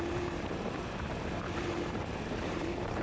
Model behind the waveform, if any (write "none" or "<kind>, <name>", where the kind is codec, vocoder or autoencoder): vocoder, BigVGAN v2